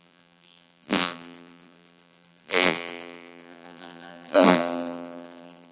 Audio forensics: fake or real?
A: fake